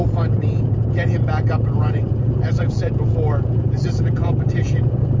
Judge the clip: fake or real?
fake